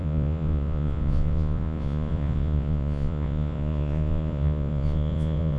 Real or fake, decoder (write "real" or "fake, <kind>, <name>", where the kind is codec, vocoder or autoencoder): fake, vocoder, Vocos